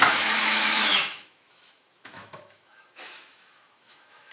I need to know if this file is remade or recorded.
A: remade